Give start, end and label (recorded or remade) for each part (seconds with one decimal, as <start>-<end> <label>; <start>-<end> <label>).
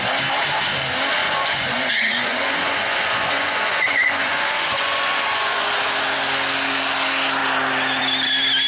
0.0-1.2 recorded; 1.2-5.7 remade; 5.7-8.7 recorded